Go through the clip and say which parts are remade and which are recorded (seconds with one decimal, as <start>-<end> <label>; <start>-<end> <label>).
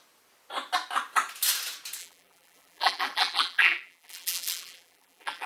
0.0-2.0 recorded; 2.0-5.5 remade